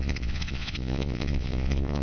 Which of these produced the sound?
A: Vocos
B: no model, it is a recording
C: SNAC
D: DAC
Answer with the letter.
A